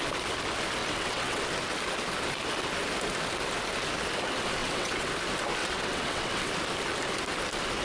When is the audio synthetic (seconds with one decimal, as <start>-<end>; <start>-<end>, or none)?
0.8-1.4; 4.6-5.1; 5.6-6.5